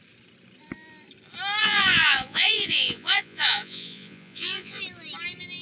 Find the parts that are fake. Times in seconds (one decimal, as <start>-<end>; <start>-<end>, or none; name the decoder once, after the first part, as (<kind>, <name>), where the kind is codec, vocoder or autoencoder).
1.6-4.8 (vocoder, Vocos)